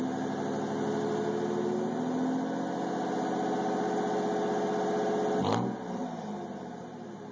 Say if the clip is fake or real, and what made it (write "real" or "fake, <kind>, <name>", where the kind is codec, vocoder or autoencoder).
real